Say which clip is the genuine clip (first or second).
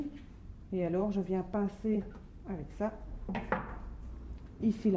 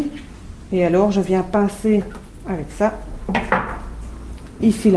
second